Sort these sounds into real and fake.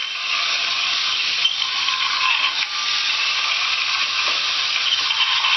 real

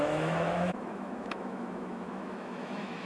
fake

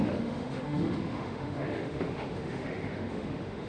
fake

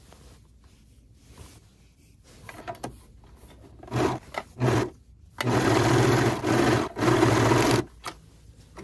real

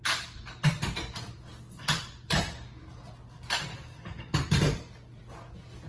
real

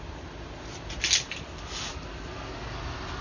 real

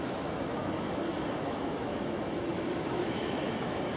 fake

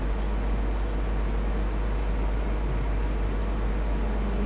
real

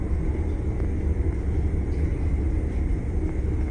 real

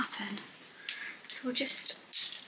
real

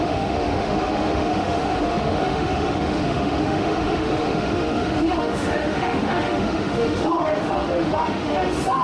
fake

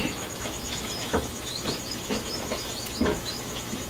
fake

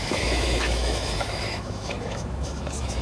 fake